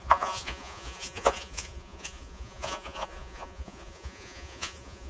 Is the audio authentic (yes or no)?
no